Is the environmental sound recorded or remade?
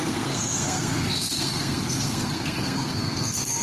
remade